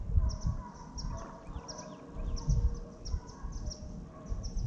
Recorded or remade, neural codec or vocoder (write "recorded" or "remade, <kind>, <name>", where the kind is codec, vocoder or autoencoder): recorded